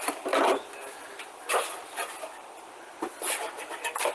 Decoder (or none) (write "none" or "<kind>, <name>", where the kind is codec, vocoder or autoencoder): none